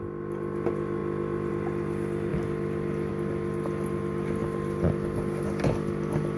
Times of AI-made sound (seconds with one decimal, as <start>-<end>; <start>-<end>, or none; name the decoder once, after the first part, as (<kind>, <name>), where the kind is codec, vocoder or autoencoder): none